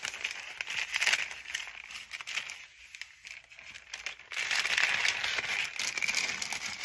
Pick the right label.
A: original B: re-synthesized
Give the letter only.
A